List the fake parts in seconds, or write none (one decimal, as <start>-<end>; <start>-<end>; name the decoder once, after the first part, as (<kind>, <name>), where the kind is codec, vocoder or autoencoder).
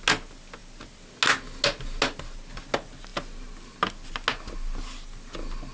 none